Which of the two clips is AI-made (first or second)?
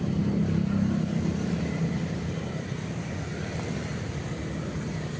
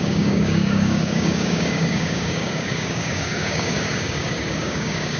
second